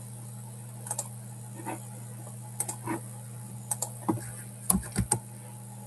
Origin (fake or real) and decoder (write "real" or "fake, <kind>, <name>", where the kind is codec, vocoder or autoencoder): real